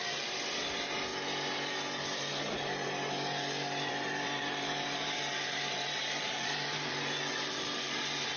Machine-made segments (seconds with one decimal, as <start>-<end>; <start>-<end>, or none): 0.0-1.1; 3.9-8.4